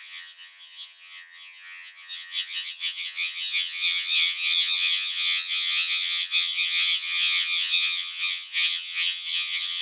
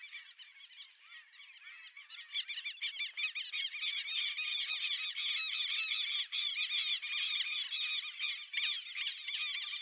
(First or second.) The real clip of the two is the second